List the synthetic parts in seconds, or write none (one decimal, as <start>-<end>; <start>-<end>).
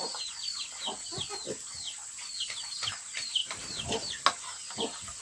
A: none